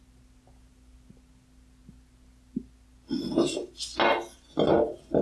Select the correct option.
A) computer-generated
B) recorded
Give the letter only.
B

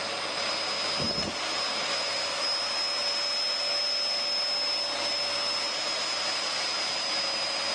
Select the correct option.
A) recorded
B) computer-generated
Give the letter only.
A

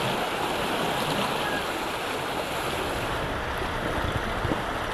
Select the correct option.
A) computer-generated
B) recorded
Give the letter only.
B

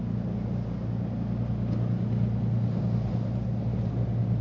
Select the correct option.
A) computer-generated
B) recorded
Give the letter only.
B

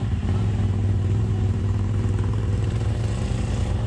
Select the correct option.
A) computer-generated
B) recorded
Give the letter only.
A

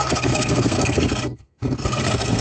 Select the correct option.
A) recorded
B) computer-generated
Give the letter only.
B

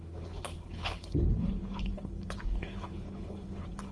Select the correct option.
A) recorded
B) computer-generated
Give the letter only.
B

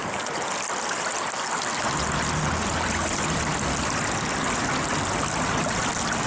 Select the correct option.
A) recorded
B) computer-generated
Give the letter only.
A